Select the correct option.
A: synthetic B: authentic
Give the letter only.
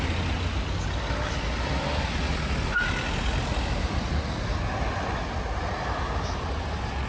B